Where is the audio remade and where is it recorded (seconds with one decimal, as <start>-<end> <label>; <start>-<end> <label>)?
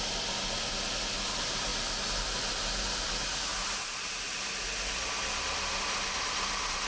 0.0-6.9 recorded